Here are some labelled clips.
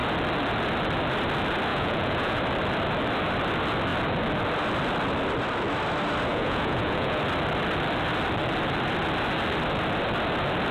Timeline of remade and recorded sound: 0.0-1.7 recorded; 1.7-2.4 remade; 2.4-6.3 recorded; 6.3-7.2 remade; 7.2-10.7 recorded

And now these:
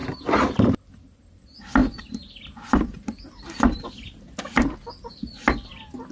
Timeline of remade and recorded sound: 0.0-6.1 recorded

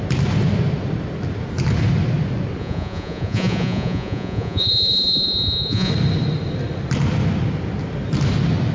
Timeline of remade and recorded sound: 0.0-2.6 recorded; 2.6-5.9 remade; 5.9-8.7 recorded

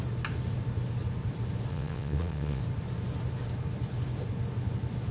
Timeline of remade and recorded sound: 0.0-1.7 recorded; 1.7-2.6 remade; 2.6-5.1 recorded

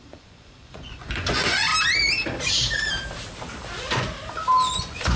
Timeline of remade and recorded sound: 0.0-1.7 remade; 1.7-4.8 recorded; 4.8-5.2 remade

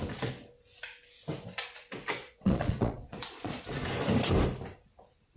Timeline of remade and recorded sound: 0.0-2.2 recorded; 2.2-3.6 remade; 3.6-5.4 recorded

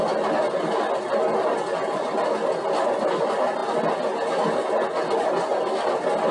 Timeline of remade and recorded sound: 0.0-6.3 recorded

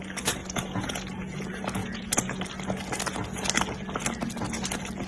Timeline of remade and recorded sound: 0.0-0.4 recorded; 0.4-1.4 remade; 1.4-1.8 recorded; 1.8-2.4 remade; 2.4-5.1 recorded